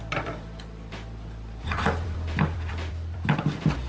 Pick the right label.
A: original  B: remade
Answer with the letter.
B